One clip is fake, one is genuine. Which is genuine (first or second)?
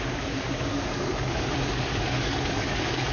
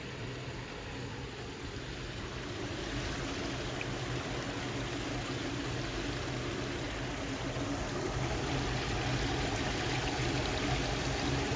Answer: second